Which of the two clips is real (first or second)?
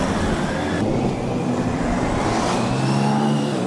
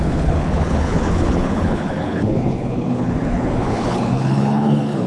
first